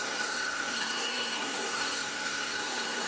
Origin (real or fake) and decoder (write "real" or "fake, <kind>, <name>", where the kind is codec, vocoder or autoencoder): fake, codec, SNAC